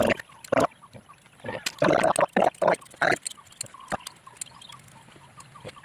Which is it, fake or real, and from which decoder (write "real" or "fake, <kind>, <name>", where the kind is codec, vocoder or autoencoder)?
real